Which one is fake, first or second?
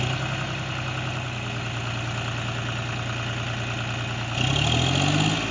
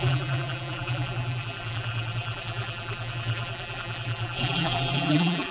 second